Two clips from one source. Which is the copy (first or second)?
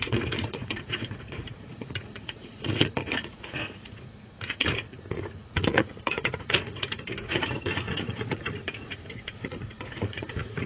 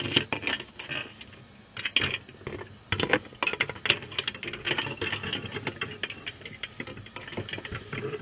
first